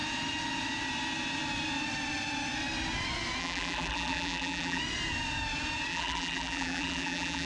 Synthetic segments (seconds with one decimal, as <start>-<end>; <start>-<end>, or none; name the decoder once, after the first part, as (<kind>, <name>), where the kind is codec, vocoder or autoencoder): 3.4-4.8 (vocoder, BigVGAN v2); 5.9-7.5